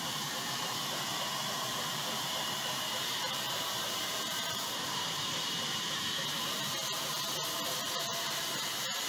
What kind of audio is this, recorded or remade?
remade